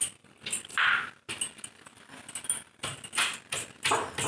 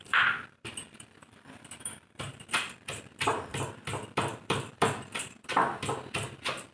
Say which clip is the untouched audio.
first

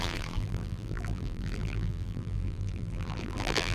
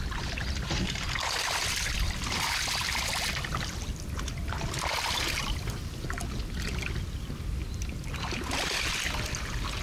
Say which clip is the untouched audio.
second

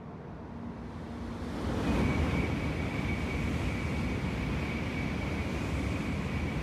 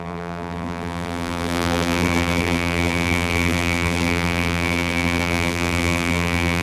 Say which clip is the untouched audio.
first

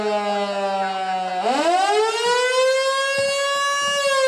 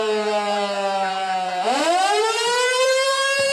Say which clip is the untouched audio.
first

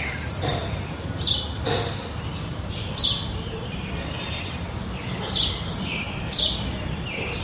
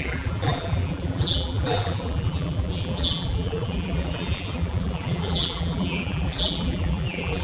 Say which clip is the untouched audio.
first